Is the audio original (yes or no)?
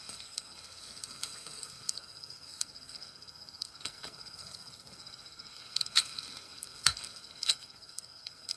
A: no